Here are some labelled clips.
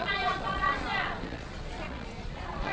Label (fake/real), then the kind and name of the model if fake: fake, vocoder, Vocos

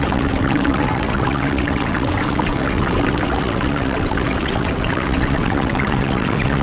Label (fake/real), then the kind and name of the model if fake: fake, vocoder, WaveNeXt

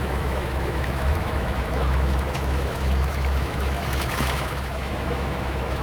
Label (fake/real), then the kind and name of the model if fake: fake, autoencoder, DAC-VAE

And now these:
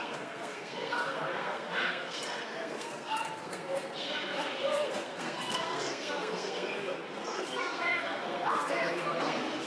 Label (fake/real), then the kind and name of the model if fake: fake, codec, SNAC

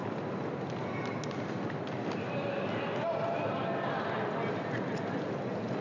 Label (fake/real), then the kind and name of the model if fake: real